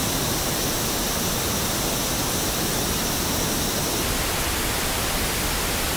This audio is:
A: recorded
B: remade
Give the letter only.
A